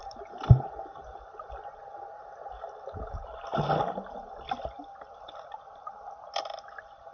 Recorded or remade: recorded